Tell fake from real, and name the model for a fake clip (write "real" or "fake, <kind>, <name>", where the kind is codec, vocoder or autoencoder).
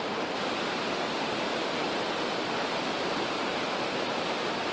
fake, vocoder, BigVGAN v2